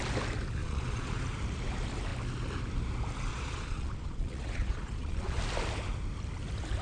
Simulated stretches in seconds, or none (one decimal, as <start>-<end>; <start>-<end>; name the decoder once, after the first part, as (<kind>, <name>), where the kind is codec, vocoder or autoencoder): 0.6-1.2 (vocoder, Vocos); 3.3-5.4